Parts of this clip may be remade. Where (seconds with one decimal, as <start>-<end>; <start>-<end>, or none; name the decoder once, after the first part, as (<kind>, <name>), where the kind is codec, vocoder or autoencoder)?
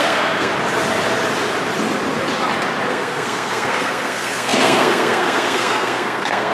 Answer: 0.0-0.5 (codec, SNAC); 2.9-6.5